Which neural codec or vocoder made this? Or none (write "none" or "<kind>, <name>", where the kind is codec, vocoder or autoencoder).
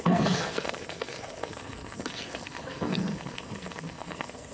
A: codec, SNAC